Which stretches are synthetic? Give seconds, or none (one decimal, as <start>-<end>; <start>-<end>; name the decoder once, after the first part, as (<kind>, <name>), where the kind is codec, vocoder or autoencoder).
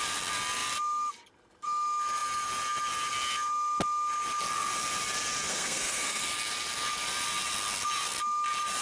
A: 5.5-6.2 (codec, SNAC)